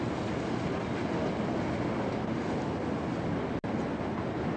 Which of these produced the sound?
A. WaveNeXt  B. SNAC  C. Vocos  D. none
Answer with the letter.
D